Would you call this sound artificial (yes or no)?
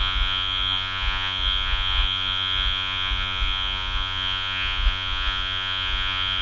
yes